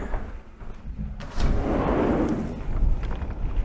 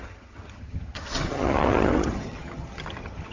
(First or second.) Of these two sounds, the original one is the first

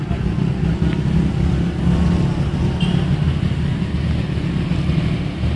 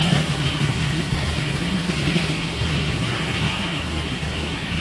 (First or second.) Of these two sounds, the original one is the first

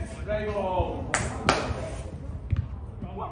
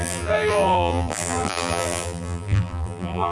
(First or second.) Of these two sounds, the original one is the first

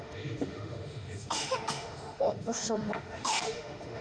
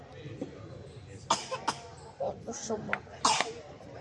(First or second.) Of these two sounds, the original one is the second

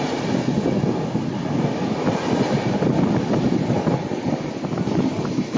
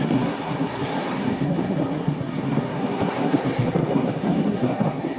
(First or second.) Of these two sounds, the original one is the first